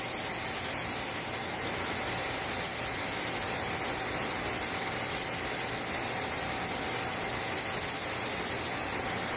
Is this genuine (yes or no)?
yes